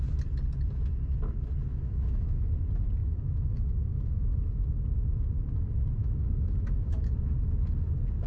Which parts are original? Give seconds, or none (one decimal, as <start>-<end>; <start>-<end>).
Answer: 0.0-1.7; 2.5-3.0; 4.8-6.0; 7.1-8.3